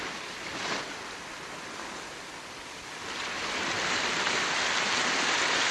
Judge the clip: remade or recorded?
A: recorded